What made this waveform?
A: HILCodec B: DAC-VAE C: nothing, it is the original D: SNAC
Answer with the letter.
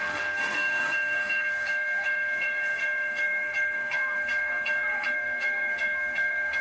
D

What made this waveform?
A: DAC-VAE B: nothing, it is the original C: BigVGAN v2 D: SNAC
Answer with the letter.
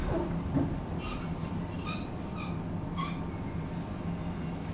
B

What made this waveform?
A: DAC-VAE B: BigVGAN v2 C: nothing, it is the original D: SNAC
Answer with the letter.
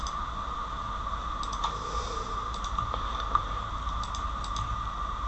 B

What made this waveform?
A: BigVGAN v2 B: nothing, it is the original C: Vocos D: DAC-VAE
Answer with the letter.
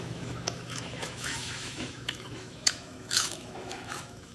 D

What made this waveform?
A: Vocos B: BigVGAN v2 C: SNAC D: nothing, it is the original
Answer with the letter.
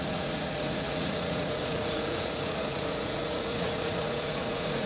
A